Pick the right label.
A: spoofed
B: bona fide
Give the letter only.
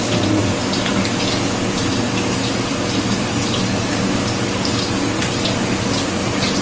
B